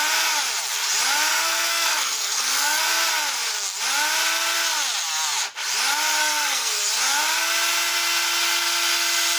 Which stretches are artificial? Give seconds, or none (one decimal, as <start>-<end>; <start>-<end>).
1.3-2.8; 6.2-6.8